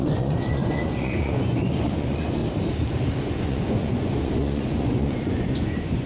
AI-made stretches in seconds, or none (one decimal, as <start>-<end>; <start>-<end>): 0.0-2.4; 3.2-6.1